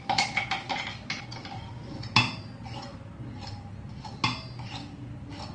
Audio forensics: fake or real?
real